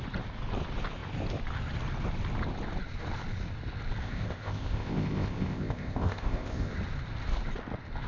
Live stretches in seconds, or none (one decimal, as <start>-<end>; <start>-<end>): 0.0-4.0; 6.7-8.1

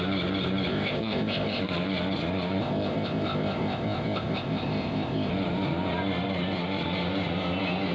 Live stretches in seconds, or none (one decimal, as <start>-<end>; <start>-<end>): 0.0-0.7; 1.6-2.6; 5.3-7.9

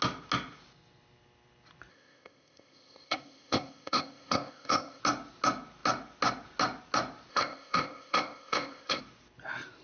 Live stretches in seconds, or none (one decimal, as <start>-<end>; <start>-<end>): 0.0-1.9; 5.0-7.3; 9.0-9.8

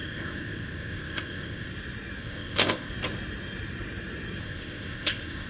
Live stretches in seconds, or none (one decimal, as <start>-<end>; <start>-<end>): 1.7-2.2; 2.9-4.4

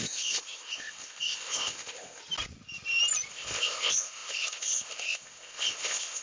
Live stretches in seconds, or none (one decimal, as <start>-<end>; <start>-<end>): 2.2-3.3